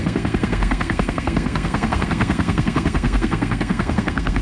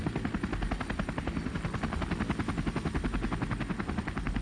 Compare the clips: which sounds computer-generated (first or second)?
first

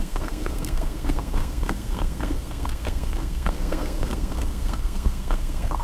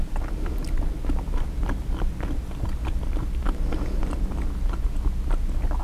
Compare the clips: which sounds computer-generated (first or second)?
first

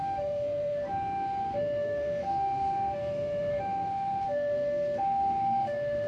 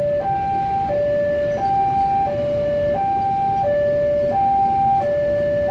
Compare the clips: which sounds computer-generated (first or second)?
first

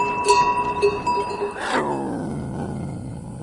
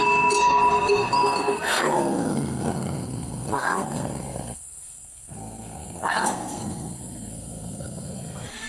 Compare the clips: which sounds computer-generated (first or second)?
second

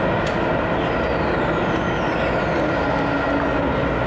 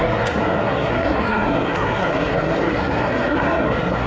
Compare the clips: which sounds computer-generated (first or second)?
second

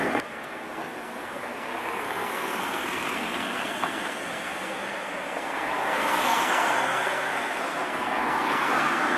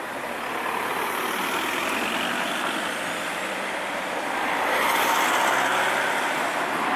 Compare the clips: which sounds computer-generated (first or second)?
first